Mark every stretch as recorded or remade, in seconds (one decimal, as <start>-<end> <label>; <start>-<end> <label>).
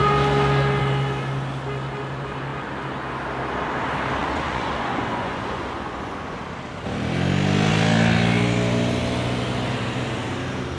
0.0-4.2 recorded; 4.2-6.4 remade; 6.4-10.8 recorded